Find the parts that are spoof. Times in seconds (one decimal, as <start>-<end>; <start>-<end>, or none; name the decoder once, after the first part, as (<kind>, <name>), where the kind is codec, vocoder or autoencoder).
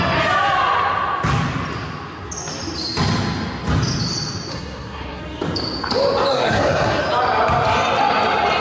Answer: 4.5-5.2 (codec, SNAC); 6.3-7.0